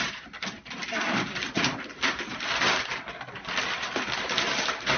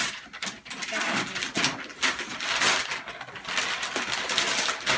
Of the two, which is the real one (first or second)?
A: second